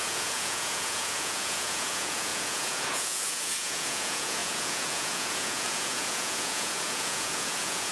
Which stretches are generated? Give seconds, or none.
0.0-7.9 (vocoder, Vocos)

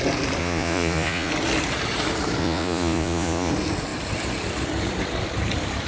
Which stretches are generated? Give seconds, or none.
0.4-1.3 (vocoder, Vocos); 2.4-3.5

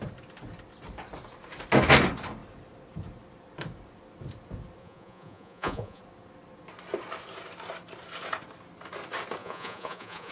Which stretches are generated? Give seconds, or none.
4.8-6.0 (vocoder, Vocos); 9.4-10.3

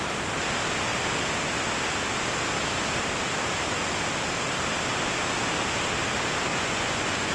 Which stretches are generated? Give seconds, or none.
6.5-7.3 (vocoder, Vocos)

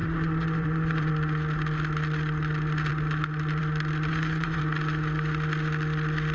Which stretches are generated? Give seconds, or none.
0.0-1.1 (vocoder, Vocos); 4.1-4.6

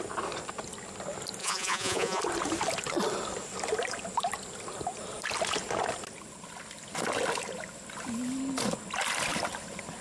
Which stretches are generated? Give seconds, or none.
1.4-2.2 (vocoder, Vocos)

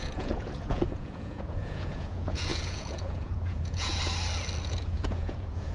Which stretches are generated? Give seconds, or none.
0.0-3.9 (vocoder, Vocos); 4.6-5.7

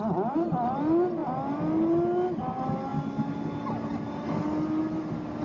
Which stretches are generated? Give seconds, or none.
none